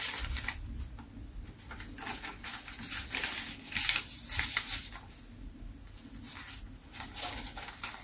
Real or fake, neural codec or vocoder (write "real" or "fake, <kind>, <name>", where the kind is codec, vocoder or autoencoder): real